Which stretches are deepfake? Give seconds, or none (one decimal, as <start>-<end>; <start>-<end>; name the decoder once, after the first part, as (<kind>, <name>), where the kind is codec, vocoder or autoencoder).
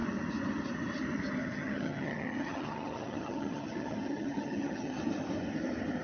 1.4-5.0 (vocoder, HiFi-GAN)